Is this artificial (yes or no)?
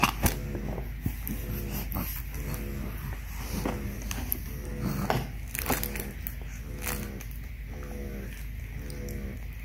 no